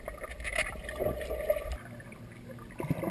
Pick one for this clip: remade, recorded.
recorded